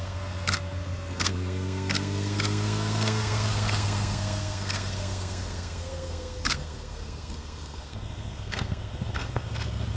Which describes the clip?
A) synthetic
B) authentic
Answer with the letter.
A